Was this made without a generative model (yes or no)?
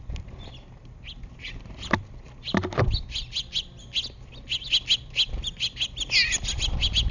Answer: yes